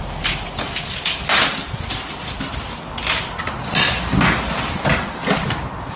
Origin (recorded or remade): recorded